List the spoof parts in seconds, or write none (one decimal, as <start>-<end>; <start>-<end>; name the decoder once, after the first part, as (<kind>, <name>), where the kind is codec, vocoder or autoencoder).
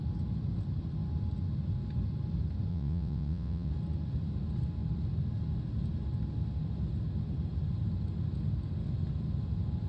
2.7-3.7 (vocoder, WaveNeXt)